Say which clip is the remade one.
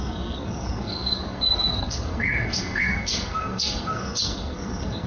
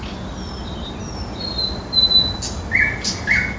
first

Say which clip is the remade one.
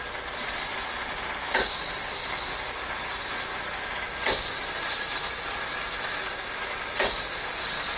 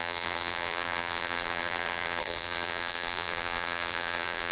second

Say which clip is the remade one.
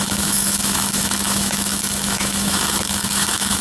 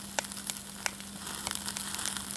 first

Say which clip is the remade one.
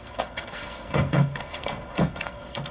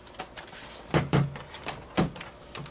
first